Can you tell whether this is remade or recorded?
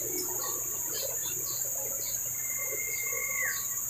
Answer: recorded